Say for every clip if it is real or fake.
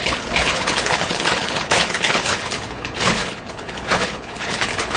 fake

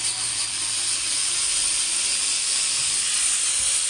real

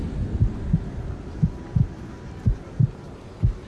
real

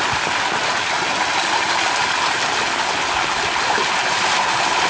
real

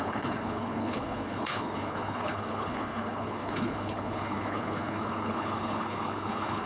fake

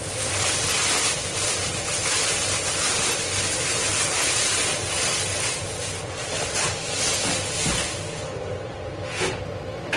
real